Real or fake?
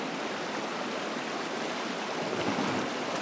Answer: real